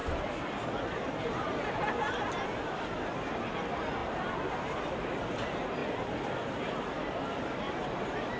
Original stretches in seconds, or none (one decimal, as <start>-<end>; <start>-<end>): 1.1-4.0; 5.2-5.8; 7.7-8.4